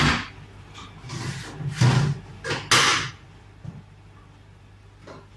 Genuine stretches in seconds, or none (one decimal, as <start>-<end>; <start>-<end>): 0.0-5.4